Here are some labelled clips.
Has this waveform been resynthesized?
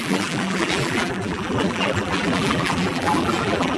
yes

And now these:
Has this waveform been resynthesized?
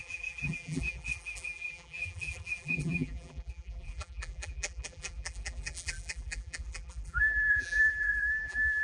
yes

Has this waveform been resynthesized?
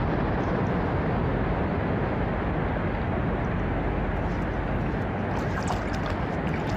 no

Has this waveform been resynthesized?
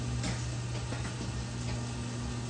no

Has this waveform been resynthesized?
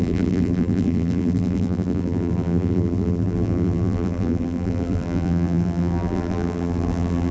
yes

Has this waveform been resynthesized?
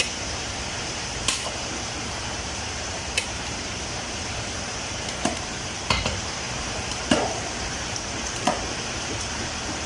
yes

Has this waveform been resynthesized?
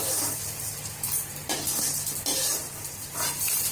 yes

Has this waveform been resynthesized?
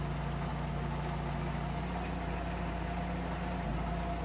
no